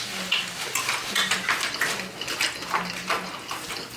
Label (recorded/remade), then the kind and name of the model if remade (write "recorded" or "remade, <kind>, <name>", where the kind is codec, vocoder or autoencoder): recorded